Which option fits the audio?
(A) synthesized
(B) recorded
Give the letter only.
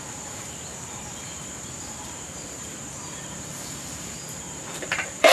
A